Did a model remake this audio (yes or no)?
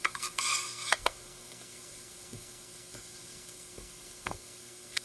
yes